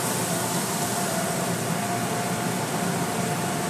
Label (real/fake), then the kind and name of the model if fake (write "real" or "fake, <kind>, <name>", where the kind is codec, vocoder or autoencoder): real